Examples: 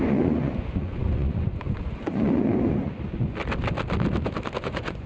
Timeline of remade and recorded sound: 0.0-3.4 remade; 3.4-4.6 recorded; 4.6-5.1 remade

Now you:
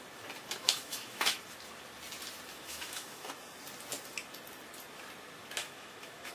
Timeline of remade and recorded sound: 0.0-0.6 recorded; 0.6-1.4 remade; 1.4-2.5 recorded; 2.5-3.3 remade; 3.3-5.6 recorded; 5.6-6.3 remade

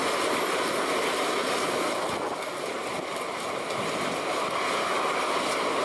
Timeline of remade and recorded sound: 0.0-5.8 recorded

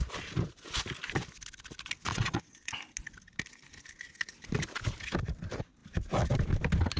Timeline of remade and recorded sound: 0.0-2.1 recorded; 2.1-2.7 remade; 2.7-7.0 recorded

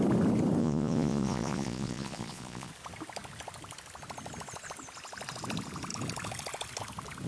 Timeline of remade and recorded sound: 0.0-0.6 recorded; 0.6-2.7 remade; 2.7-7.3 recorded

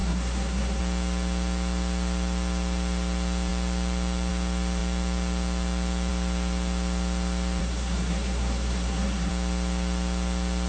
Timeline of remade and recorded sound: 0.0-0.8 remade; 0.8-7.6 recorded; 7.6-9.3 remade; 9.3-10.7 recorded

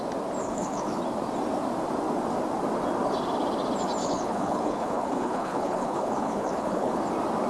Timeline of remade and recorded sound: 0.0-0.4 recorded; 0.4-1.0 remade; 1.0-4.0 recorded; 4.0-7.0 remade; 7.0-7.5 recorded